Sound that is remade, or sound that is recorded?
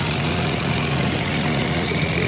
remade